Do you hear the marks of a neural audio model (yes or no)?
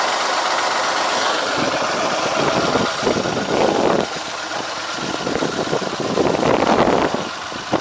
no